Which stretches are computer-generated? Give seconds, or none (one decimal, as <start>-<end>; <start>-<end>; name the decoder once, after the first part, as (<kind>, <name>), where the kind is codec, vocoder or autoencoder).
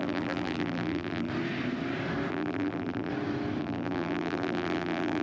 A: 0.0-1.3 (vocoder, BigVGAN v2); 2.3-3.1; 3.6-5.2